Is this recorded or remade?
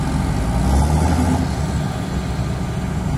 recorded